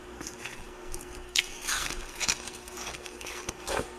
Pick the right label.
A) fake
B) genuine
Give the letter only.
A